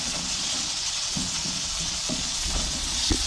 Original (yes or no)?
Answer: no